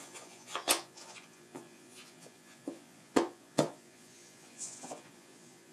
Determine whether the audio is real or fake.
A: fake